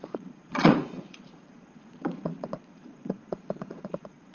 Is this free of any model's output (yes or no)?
no